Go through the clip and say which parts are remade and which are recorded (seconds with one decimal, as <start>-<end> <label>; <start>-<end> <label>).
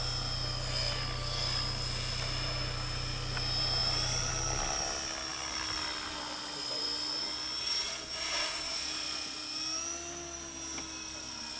0.0-3.8 recorded; 3.8-4.3 remade; 4.3-5.3 recorded; 5.3-5.8 remade; 5.8-11.6 recorded